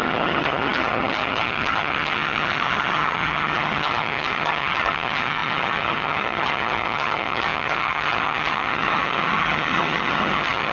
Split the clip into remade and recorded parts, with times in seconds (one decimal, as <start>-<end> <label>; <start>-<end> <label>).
0.0-10.7 remade